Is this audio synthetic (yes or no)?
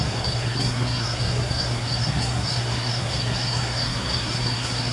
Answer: yes